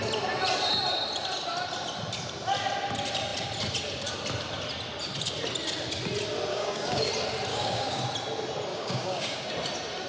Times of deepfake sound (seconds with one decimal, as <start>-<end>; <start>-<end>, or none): 6.5-7.1; 7.5-8.0; 8.7-9.5